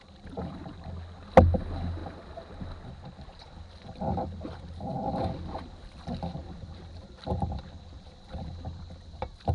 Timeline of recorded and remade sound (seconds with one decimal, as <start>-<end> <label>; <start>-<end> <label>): 0.0-6.4 recorded; 6.4-7.8 remade; 7.8-9.5 recorded